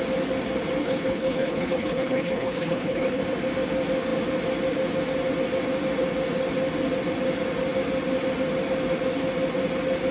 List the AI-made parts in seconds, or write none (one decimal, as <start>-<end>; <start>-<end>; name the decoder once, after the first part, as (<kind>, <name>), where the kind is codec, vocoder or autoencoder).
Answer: 0.8-3.2 (codec, HILCodec)